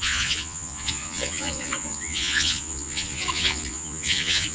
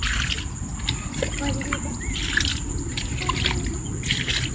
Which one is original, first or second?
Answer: second